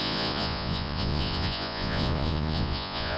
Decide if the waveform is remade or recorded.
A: remade